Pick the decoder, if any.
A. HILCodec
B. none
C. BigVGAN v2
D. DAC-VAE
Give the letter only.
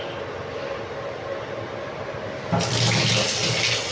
B